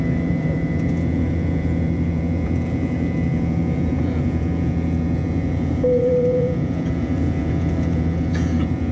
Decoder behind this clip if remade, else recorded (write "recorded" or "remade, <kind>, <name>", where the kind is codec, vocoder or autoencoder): remade, vocoder, Vocos